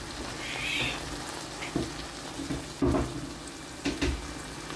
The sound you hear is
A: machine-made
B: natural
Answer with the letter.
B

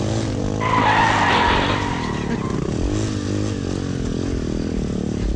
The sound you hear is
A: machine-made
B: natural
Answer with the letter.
B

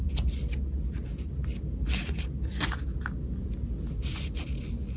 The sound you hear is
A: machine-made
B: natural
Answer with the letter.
B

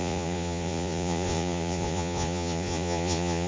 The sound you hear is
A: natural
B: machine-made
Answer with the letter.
B